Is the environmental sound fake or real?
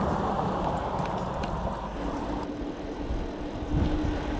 real